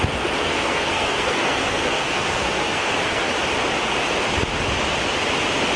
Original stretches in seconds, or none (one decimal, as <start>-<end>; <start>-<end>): 0.0-0.4; 3.3-5.8